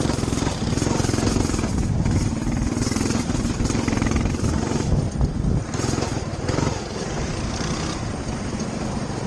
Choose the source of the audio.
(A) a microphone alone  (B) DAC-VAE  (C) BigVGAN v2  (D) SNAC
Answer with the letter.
C